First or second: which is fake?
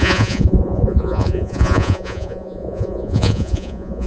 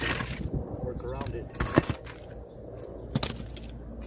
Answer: first